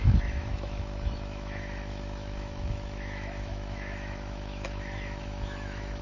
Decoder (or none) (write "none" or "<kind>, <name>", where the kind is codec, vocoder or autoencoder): autoencoder, DAC-VAE